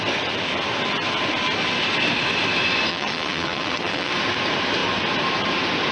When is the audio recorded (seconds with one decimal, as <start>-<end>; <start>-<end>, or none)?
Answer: 0.0-2.9; 4.1-5.9